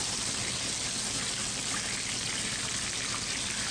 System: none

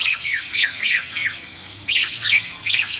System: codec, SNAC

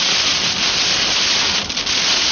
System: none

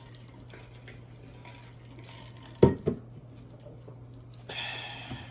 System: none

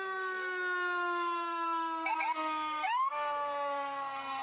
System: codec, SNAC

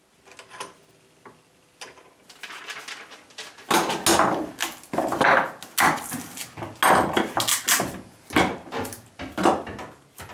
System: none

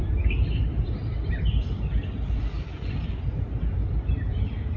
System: none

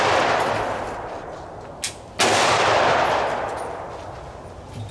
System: none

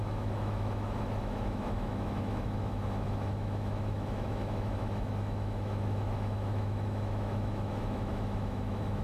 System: autoencoder, DAC-VAE